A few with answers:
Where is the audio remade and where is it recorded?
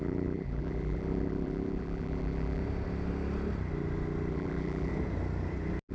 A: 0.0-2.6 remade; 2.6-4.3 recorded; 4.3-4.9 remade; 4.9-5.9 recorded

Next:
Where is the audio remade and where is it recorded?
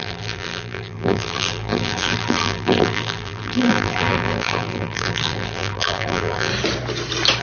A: 0.0-6.5 remade; 6.5-7.4 recorded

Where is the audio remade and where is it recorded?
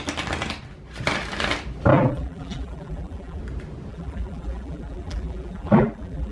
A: 0.0-1.9 recorded; 1.9-3.4 remade; 3.4-3.9 recorded; 3.9-6.3 remade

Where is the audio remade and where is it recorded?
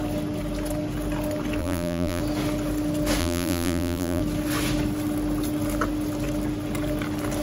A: 0.0-1.6 recorded; 1.6-2.2 remade; 2.2-3.2 recorded; 3.2-4.2 remade; 4.2-7.4 recorded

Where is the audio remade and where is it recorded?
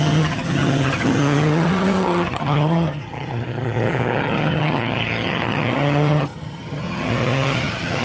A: 0.0-8.0 remade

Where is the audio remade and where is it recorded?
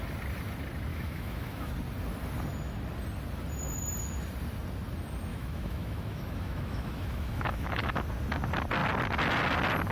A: 0.0-0.9 recorded; 0.9-1.7 remade; 1.7-5.3 recorded; 5.3-8.0 remade; 8.0-9.9 recorded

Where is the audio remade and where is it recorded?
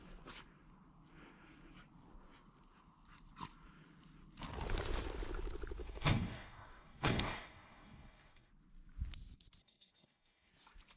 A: 0.0-5.8 recorded; 5.8-8.5 remade; 8.5-9.6 recorded; 9.6-10.5 remade; 10.5-11.0 recorded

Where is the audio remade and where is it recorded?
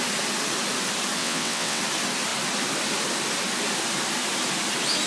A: 0.0-1.2 recorded; 1.2-1.8 remade; 1.8-5.1 recorded